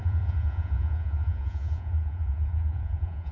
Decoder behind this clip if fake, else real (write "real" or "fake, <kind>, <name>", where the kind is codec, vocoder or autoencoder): fake, vocoder, Vocos